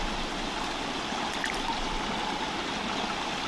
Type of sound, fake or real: real